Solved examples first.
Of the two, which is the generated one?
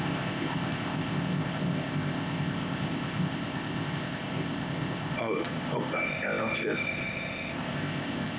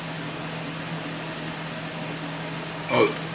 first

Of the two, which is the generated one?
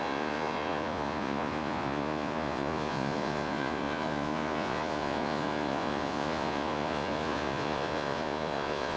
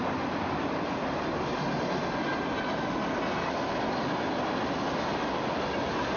first